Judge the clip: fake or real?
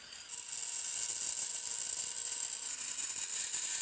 real